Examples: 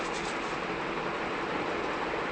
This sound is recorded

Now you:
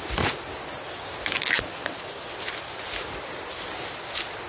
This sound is recorded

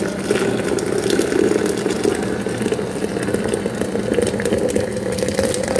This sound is recorded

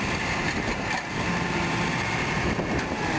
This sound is remade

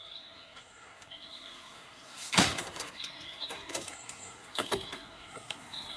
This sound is remade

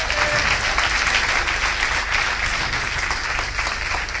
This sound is recorded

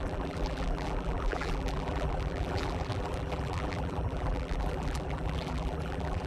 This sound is remade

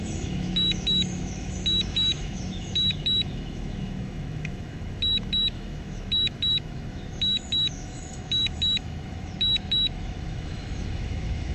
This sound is remade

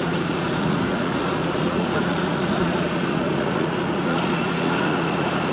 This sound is remade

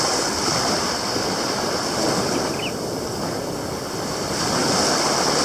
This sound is recorded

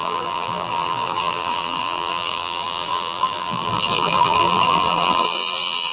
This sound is remade